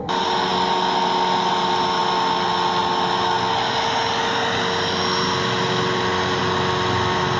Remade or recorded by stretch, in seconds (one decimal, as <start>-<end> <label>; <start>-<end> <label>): 0.0-7.4 recorded